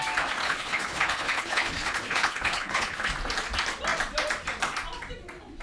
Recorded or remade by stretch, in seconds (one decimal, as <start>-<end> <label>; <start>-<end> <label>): 0.0-0.4 recorded; 0.4-3.1 remade; 3.1-5.6 recorded